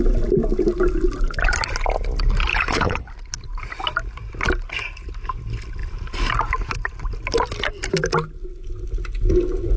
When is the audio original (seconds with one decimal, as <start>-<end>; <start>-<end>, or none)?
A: 0.0-2.5; 3.1-9.8

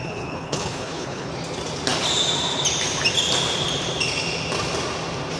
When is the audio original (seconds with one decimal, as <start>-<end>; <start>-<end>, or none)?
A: 1.3-5.4

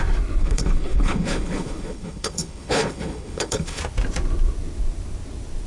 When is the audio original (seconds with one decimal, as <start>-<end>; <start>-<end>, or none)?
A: 0.0-0.4; 3.8-5.7

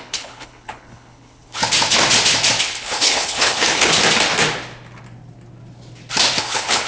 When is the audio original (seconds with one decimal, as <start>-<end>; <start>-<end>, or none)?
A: 1.6-2.6; 3.9-6.4

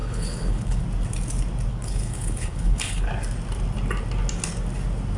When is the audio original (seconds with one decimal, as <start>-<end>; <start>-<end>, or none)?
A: 0.8-1.7; 3.1-5.2

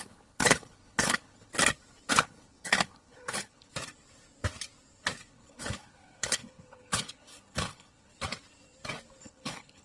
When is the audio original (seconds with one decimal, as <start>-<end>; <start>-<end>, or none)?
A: 1.5-2.1; 3.7-5.3; 8.1-9.2